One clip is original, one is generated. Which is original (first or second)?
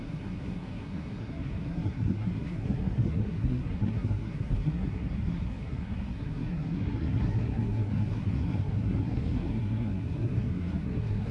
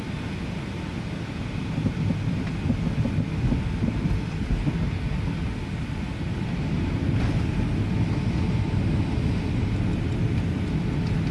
second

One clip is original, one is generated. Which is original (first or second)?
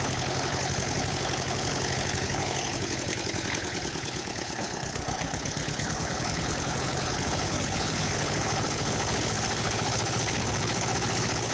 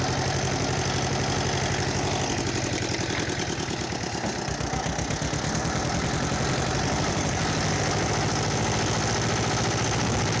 second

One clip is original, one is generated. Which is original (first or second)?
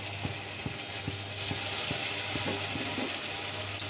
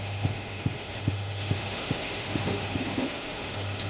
first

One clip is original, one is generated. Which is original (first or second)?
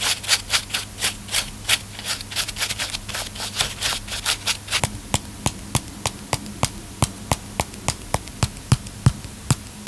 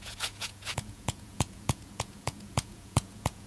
first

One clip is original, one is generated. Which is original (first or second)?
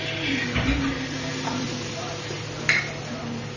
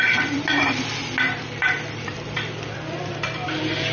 first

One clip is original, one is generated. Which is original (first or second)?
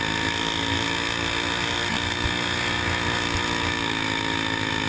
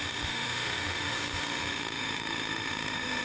first